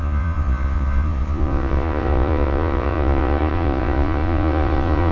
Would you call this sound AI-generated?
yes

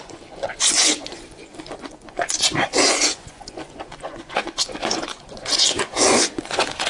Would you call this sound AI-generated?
yes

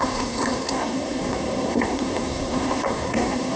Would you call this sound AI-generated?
yes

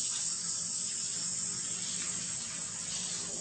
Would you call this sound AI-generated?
no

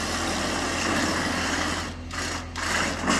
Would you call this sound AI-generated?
no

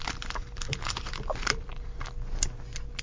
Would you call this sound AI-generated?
no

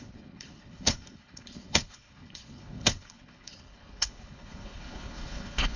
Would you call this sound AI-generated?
yes